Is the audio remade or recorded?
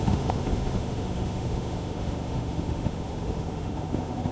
remade